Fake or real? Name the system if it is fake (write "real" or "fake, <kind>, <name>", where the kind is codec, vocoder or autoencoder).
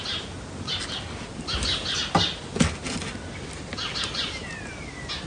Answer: real